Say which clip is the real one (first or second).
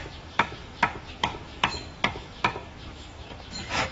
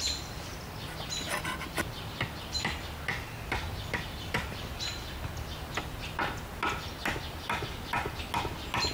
second